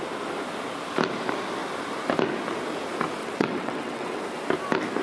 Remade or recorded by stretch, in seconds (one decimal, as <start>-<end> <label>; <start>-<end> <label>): 0.0-3.2 recorded; 3.2-4.2 remade; 4.2-5.0 recorded